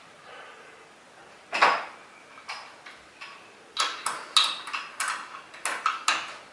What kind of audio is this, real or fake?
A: real